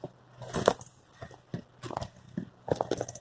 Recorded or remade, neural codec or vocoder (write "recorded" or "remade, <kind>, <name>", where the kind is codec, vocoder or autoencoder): recorded